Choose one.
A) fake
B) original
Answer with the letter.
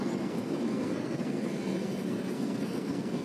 A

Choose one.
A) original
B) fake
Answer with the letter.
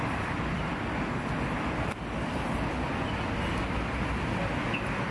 A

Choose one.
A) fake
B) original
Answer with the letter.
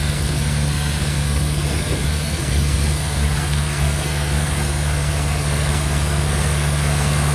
A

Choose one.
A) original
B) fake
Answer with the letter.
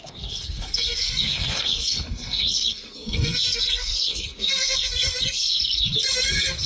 B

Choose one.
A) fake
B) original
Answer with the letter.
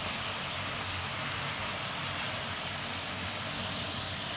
B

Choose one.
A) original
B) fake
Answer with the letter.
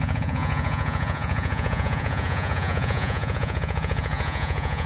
B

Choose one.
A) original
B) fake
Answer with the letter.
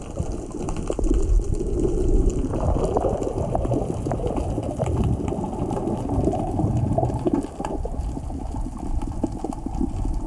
A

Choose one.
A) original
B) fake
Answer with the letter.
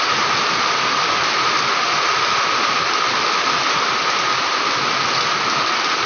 A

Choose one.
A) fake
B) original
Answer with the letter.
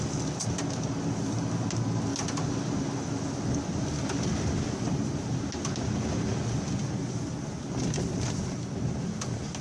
B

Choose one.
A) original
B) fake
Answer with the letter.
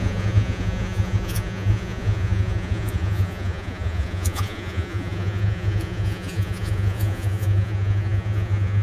B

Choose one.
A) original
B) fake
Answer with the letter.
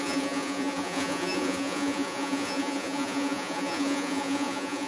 B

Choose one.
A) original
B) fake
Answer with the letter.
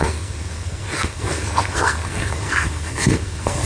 B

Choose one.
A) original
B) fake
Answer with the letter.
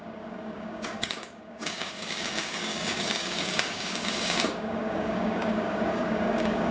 B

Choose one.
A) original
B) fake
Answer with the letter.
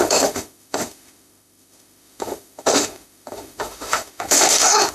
B